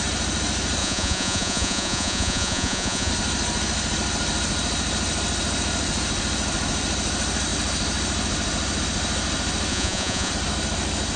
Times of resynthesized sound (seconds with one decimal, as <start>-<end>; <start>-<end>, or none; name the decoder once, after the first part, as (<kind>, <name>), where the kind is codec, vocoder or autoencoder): 0.8-3.1 (vocoder, Vocos); 9.7-10.3